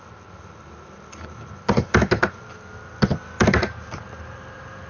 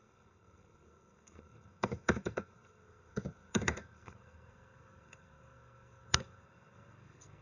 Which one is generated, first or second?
second